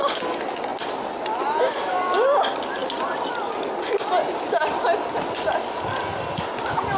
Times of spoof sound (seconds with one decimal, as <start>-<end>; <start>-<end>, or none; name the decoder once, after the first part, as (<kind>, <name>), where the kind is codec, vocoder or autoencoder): 0.7-2.4 (vocoder, BigVGAN v2); 2.8-5.2